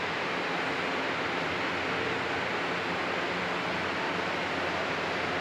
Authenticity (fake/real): real